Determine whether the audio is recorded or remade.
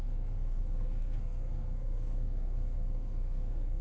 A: remade